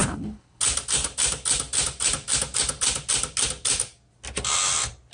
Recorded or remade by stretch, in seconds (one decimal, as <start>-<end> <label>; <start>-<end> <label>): 0.0-0.6 remade; 0.6-5.1 recorded